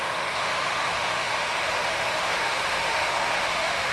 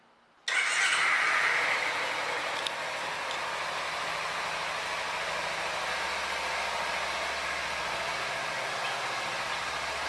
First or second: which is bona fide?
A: second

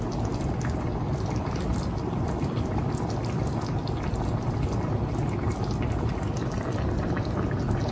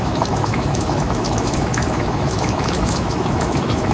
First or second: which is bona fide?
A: first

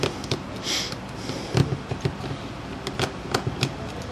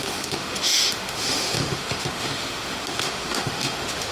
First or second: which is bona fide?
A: first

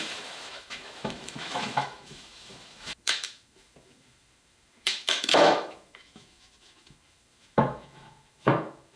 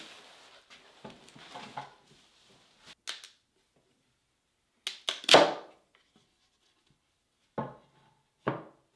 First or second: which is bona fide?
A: second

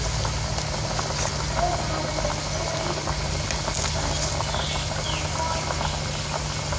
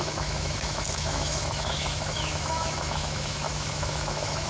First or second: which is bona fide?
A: first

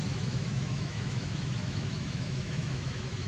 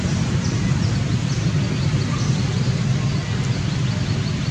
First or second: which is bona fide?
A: second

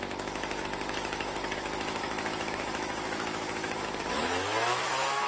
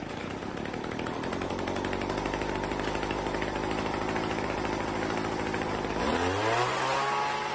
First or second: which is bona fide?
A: second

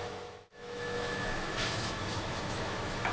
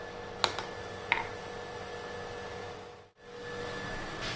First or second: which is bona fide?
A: second